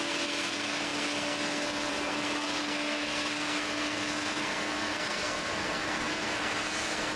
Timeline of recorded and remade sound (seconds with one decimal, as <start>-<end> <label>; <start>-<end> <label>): 0.0-7.2 remade